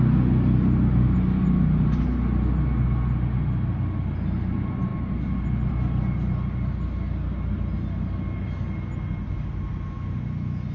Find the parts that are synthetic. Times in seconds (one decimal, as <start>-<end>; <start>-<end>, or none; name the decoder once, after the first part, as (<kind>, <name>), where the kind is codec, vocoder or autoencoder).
none